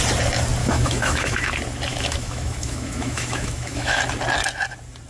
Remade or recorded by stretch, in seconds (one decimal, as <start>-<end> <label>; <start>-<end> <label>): 0.0-0.6 recorded; 0.6-1.5 remade; 1.5-1.9 recorded; 1.9-4.0 remade; 4.0-5.1 recorded